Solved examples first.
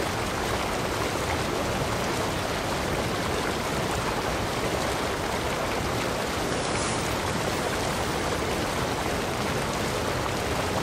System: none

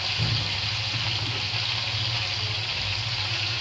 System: vocoder, BigVGAN v2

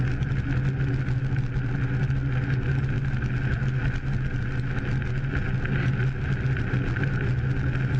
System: none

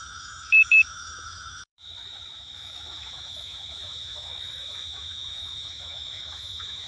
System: autoencoder, DAC-VAE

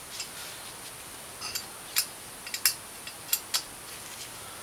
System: none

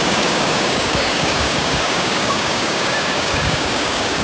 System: codec, DAC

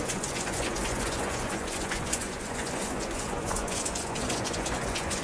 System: vocoder, Vocos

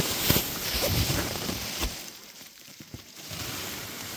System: vocoder, BigVGAN v2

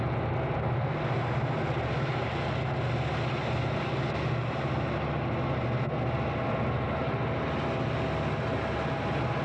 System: none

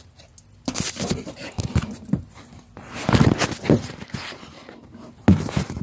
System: none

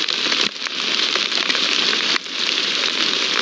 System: vocoder, BigVGAN v2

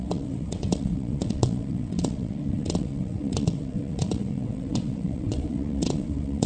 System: vocoder, WaveNeXt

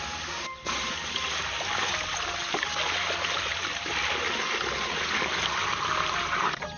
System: none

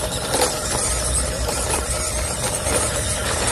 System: vocoder, BigVGAN v2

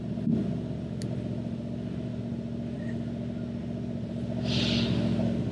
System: none